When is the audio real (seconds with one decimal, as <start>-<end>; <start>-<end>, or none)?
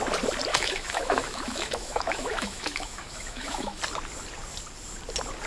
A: 0.0-0.5; 3.8-5.5